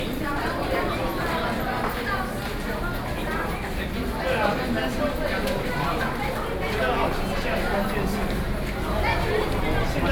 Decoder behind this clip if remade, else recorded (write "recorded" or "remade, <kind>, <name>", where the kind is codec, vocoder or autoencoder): recorded